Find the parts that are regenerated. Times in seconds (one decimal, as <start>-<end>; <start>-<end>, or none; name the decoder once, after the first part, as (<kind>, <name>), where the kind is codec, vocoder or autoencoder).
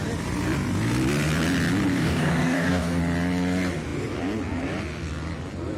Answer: 1.9-3.0 (codec, DAC)